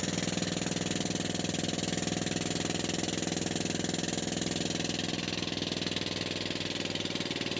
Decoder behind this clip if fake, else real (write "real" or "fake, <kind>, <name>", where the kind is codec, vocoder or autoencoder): real